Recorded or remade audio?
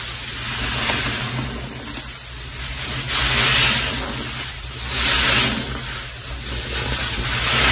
recorded